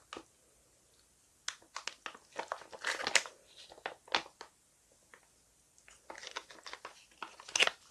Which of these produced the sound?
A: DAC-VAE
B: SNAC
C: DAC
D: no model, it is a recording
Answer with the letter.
D